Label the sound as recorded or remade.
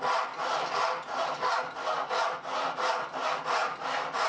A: recorded